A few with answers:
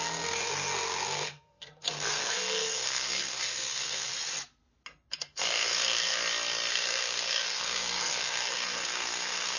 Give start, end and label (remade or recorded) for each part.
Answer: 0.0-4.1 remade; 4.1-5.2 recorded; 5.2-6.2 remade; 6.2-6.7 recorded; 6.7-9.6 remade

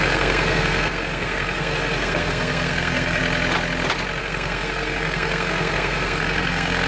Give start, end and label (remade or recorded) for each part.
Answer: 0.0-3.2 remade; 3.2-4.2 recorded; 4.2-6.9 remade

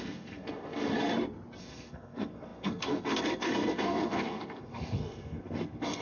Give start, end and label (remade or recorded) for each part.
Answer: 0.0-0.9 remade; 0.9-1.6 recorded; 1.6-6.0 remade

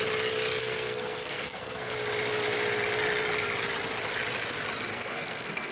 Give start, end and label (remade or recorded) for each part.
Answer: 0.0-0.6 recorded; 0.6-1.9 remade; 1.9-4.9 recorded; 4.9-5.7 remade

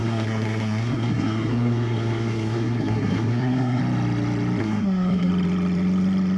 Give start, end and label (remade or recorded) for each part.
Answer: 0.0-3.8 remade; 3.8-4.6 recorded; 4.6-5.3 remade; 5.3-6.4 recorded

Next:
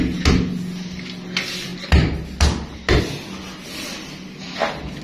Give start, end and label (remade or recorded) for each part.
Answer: 0.0-5.0 recorded

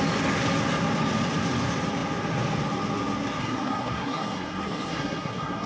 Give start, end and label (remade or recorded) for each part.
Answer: 0.0-3.4 recorded; 3.4-5.7 remade